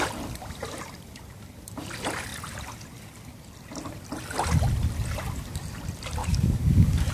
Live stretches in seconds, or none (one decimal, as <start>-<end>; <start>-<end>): 0.0-6.2